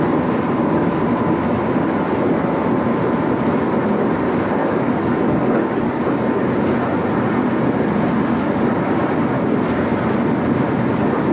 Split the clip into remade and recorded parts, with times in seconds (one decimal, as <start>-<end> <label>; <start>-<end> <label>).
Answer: 0.0-4.6 recorded; 4.6-6.0 remade; 6.0-11.3 recorded